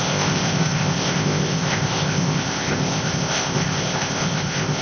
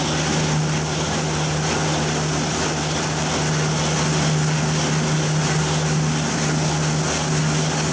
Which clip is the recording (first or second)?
second